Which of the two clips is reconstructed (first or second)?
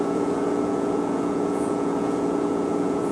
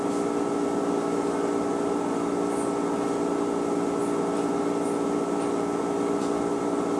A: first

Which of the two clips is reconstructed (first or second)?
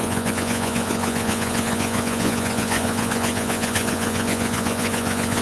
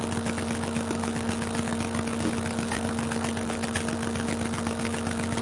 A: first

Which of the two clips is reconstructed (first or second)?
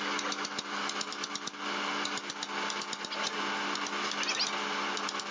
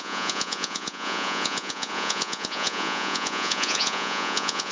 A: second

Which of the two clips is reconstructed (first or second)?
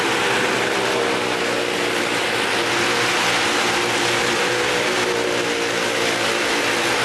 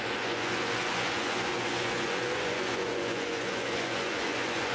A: second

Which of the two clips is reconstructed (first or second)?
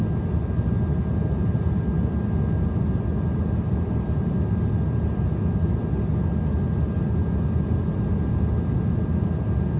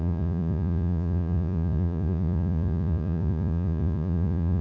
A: second